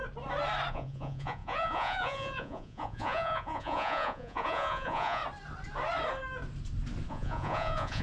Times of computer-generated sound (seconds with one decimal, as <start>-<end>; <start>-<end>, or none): 0.7-5.2; 7.1-8.0